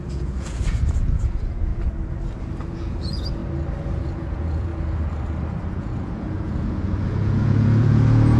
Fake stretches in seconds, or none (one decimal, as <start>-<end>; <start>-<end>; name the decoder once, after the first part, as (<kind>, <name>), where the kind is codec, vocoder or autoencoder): 0.0-1.7 (vocoder, Vocos); 2.4-3.4; 4.0-4.7; 5.7-8.4